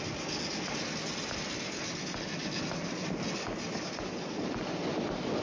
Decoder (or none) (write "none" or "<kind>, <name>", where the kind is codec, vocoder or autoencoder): none